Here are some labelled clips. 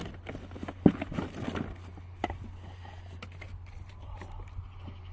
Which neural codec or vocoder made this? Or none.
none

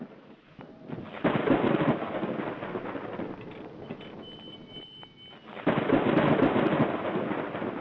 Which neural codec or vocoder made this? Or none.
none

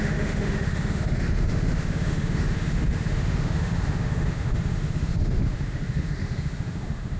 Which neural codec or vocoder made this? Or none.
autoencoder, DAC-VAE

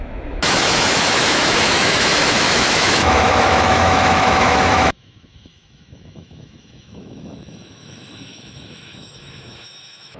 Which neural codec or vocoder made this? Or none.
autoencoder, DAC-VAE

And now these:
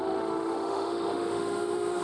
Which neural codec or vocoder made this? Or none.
autoencoder, DAC-VAE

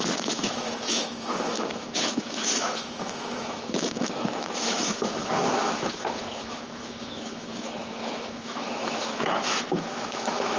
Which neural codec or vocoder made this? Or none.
autoencoder, DAC-VAE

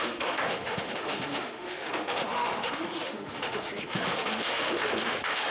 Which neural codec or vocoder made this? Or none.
autoencoder, DAC-VAE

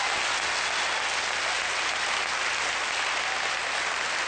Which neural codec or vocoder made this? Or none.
none